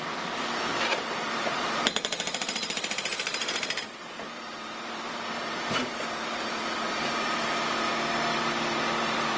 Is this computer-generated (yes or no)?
yes